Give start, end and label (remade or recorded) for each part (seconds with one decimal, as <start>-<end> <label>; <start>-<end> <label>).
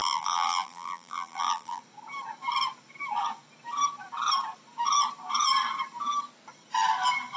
0.0-1.8 remade; 1.8-7.4 recorded